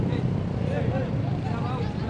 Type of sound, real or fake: real